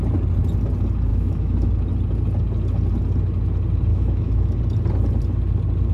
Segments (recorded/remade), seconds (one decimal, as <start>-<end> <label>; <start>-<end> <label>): 0.0-1.1 recorded; 1.1-1.7 remade; 1.7-3.9 recorded; 3.9-4.6 remade; 4.6-5.9 recorded